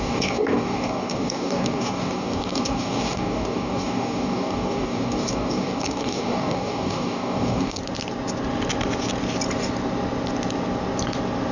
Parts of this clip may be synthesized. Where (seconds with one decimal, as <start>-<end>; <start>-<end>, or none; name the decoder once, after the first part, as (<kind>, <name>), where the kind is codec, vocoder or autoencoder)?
0.0-7.8 (codec, DAC)